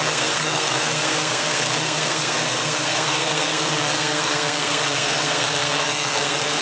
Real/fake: fake